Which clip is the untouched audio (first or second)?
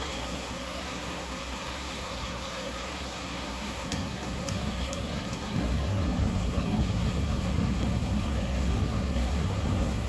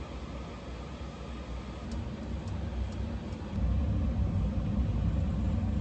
second